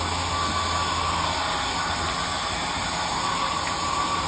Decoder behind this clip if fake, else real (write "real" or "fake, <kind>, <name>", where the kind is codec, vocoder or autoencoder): real